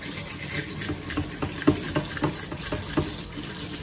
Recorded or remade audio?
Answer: recorded